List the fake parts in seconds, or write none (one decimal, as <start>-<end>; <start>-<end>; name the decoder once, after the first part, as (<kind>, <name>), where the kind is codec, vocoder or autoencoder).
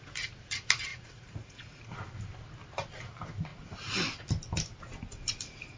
0.9-1.8 (vocoder, Vocos)